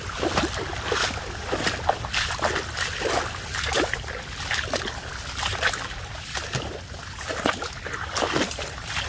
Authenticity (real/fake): real